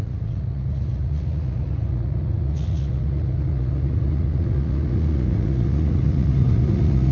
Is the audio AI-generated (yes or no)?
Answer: yes